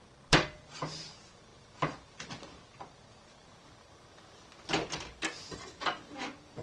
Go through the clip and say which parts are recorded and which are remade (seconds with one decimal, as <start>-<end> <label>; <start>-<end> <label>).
0.0-6.6 recorded